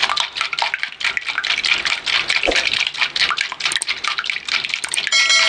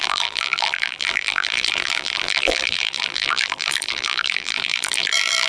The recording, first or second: first